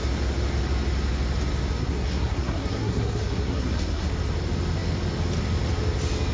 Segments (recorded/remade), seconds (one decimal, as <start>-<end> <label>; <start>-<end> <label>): 0.0-1.8 recorded; 1.8-4.1 remade; 4.1-6.3 recorded